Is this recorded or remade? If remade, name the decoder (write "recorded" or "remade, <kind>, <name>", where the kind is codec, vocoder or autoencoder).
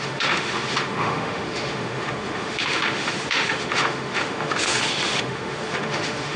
remade, autoencoder, DAC-VAE